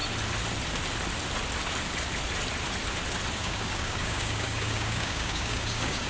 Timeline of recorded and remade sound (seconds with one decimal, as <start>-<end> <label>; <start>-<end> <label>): 0.0-3.3 recorded; 3.3-6.1 remade